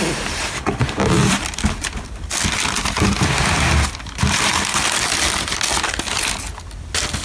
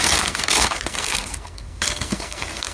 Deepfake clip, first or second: second